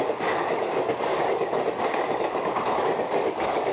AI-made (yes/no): yes